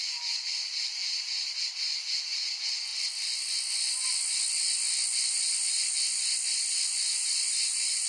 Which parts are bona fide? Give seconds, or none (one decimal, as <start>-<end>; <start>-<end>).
0.0-8.1